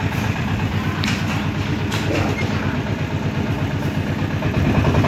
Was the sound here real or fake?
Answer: fake